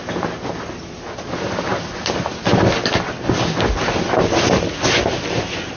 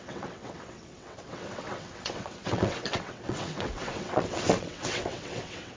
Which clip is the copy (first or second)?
second